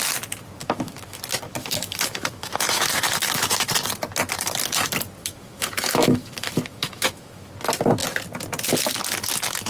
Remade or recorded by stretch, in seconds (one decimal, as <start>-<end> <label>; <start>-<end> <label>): 0.0-0.6 recorded; 0.6-1.2 remade; 1.2-1.6 recorded; 1.6-3.7 remade; 3.7-5.2 recorded; 5.2-7.5 remade; 7.5-9.7 recorded